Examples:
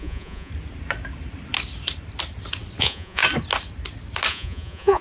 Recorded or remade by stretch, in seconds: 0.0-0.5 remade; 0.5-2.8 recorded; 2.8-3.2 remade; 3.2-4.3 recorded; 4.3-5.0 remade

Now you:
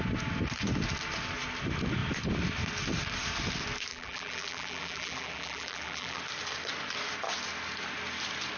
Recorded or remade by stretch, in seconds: 0.0-3.9 recorded; 3.9-6.2 remade; 6.2-8.6 recorded